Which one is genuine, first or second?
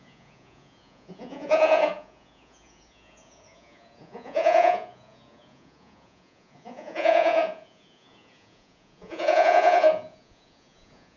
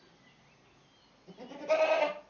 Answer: second